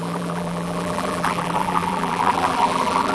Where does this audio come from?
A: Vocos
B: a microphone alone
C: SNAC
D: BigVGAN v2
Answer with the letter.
D